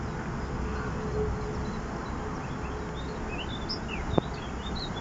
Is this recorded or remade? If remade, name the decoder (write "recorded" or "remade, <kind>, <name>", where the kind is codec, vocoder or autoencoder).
recorded